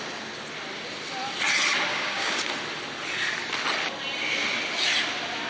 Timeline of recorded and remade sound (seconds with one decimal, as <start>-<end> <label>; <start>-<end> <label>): 0.0-1.9 recorded; 1.9-2.4 remade; 2.4-5.5 recorded

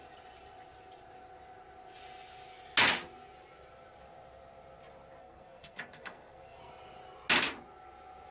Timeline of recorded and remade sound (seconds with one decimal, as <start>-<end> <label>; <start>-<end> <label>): 0.0-5.2 recorded; 5.2-6.7 remade; 6.7-8.3 recorded

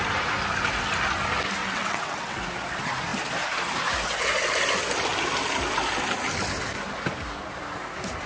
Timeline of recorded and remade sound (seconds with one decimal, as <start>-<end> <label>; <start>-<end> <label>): 0.0-1.6 recorded; 1.6-2.4 remade; 2.4-8.3 recorded

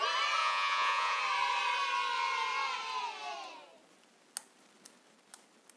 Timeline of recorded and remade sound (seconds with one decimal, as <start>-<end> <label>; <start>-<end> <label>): 0.0-0.4 recorded; 0.4-1.2 remade; 1.2-5.8 recorded

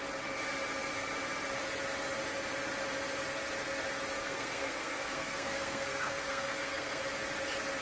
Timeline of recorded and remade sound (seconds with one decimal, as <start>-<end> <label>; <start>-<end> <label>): 0.0-4.2 recorded; 4.2-7.0 remade; 7.0-7.8 recorded

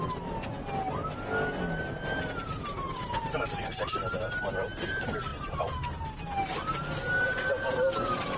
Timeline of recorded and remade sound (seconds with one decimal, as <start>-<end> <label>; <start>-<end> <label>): 0.0-8.4 recorded

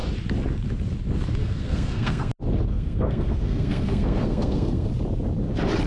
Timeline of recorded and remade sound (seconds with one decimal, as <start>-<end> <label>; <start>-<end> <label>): 0.0-1.4 recorded; 1.4-2.3 remade; 2.3-2.7 recorded; 2.7-4.9 remade; 4.9-5.9 recorded